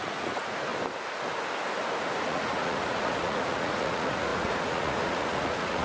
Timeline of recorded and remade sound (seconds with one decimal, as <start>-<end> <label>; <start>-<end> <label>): 0.0-0.7 remade; 0.7-2.2 recorded; 2.2-5.8 remade